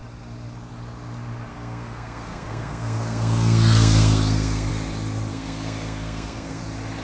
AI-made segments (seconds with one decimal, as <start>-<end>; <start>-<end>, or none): 1.5-4.7; 5.3-6.6